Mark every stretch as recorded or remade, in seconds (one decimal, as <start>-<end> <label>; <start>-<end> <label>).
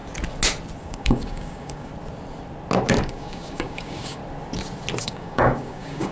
0.0-0.8 recorded; 0.8-1.9 remade; 1.9-3.0 recorded; 3.0-4.2 remade; 4.2-5.0 recorded; 5.0-6.1 remade